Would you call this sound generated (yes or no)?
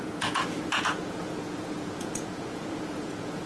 yes